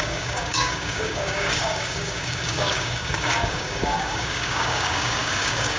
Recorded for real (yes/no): no